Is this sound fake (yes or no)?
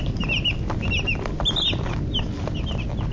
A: no